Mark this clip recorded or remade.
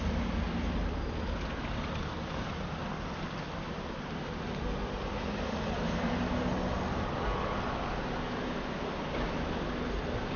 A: recorded